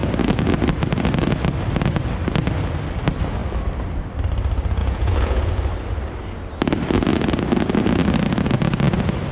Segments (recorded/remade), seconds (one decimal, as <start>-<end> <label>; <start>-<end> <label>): 0.0-4.8 recorded; 4.8-5.5 remade; 5.5-9.3 recorded